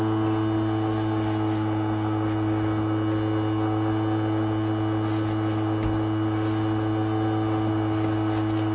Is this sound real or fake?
real